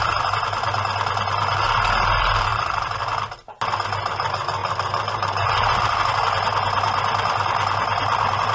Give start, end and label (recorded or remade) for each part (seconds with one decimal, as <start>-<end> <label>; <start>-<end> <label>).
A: 0.0-2.5 recorded; 2.5-3.0 remade; 3.0-4.6 recorded; 4.6-5.5 remade; 5.5-8.5 recorded